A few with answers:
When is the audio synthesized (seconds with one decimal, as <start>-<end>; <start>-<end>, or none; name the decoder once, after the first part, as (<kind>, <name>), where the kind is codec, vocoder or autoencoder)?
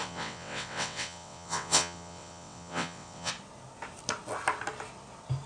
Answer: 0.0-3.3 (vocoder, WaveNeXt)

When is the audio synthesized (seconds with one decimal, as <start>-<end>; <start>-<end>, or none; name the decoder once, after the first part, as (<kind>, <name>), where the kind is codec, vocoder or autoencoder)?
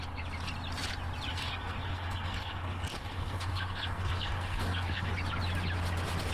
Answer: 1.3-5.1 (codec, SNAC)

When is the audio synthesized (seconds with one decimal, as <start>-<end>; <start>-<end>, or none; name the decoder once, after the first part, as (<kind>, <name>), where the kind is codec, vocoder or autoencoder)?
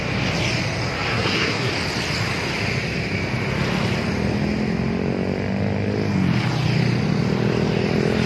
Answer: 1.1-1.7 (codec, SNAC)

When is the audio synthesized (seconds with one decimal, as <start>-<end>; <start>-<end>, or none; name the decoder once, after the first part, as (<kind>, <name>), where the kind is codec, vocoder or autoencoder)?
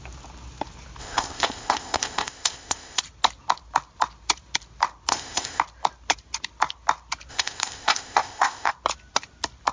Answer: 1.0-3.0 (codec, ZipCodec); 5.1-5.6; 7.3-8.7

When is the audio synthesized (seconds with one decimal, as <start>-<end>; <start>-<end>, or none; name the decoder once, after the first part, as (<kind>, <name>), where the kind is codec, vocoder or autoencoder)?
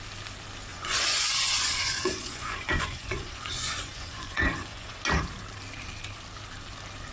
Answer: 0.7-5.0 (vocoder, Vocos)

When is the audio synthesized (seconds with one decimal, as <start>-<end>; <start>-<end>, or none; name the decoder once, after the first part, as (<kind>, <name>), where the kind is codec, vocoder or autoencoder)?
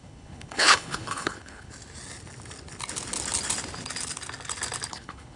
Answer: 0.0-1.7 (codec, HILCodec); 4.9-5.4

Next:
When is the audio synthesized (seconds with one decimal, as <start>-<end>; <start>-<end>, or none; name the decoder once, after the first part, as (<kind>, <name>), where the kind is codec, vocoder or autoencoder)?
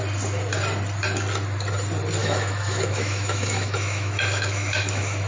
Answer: 2.2-5.3 (autoencoder, DAC-VAE)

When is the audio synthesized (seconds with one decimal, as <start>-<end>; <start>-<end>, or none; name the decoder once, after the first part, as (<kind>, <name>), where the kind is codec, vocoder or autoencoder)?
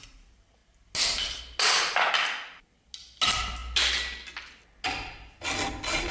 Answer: none